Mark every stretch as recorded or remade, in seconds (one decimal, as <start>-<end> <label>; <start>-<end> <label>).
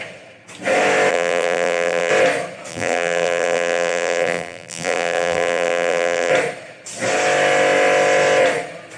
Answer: 0.0-1.1 recorded; 1.1-2.1 remade; 2.1-2.7 recorded; 2.7-6.3 remade; 6.3-9.0 recorded